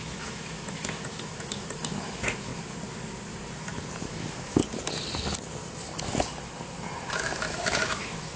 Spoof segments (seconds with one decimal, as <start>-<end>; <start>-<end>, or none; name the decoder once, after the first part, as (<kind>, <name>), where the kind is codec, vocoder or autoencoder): 0.0-2.5 (autoencoder, DAC-VAE); 4.0-4.6; 7.1-8.4